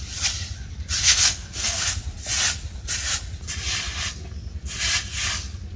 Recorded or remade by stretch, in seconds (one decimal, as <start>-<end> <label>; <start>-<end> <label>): 0.0-1.0 recorded; 1.0-1.9 remade; 1.9-5.8 recorded